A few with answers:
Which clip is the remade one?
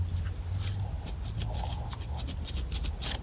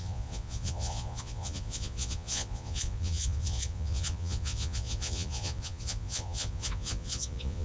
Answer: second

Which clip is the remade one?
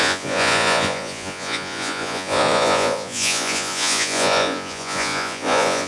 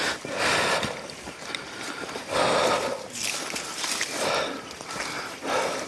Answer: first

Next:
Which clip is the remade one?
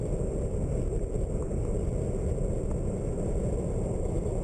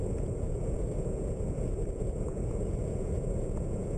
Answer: second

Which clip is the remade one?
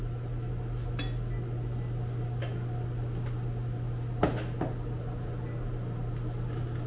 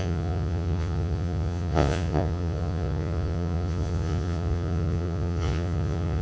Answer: second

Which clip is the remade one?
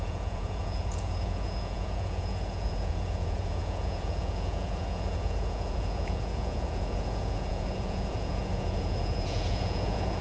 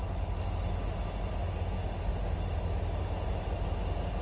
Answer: first